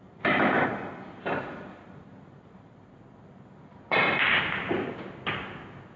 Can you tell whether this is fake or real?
real